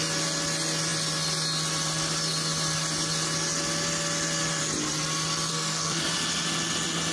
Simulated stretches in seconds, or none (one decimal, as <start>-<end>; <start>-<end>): 5.5-6.0